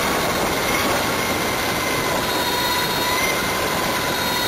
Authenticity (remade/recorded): recorded